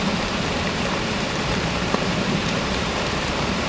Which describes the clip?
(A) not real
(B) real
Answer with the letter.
A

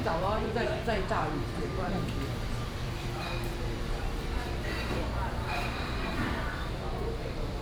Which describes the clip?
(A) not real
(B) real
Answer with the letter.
A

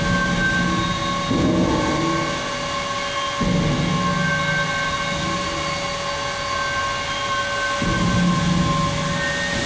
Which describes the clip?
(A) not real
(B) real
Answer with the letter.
B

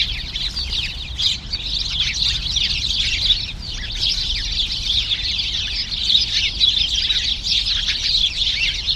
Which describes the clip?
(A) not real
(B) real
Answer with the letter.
B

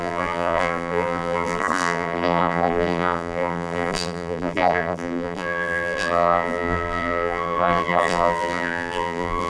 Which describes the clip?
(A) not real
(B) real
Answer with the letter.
A